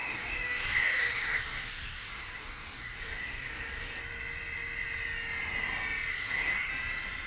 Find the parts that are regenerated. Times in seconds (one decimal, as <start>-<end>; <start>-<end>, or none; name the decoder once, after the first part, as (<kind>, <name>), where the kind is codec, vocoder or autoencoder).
0.0-4.0 (codec, DAC); 6.1-6.7